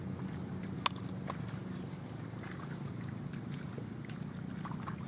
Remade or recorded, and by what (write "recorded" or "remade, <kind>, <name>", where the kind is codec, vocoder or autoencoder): recorded